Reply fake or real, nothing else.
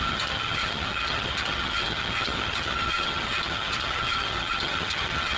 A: fake